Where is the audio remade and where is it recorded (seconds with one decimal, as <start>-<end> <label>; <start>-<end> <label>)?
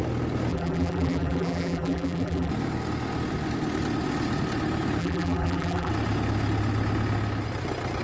0.0-0.5 recorded; 0.5-2.5 remade; 2.5-5.0 recorded; 5.0-5.9 remade; 5.9-8.0 recorded